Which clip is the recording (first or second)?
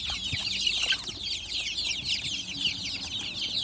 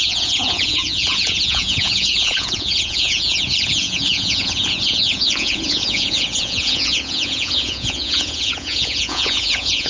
first